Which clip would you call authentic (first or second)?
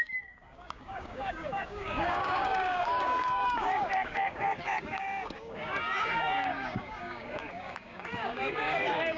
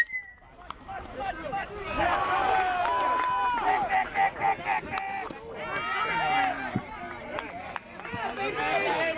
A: second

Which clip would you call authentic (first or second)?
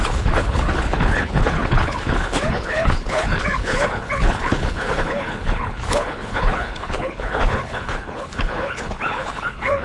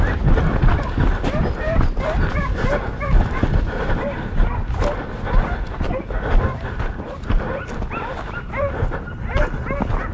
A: second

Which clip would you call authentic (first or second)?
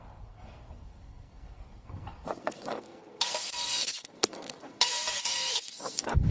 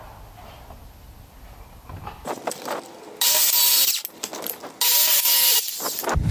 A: second